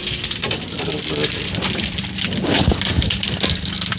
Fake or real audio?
real